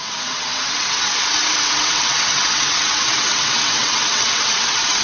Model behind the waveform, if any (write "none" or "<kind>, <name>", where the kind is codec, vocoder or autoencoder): vocoder, WaveNeXt